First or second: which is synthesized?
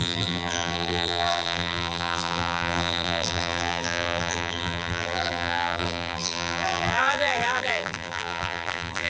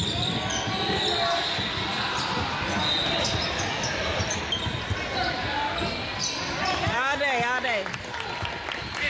first